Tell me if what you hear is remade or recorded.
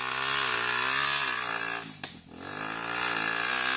recorded